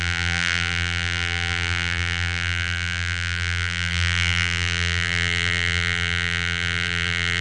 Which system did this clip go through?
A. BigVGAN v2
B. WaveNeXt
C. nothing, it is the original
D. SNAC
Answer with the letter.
A